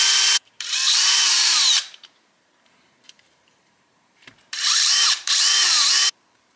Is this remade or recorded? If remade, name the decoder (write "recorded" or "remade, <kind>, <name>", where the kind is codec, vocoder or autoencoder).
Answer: remade, vocoder, BigVGAN v2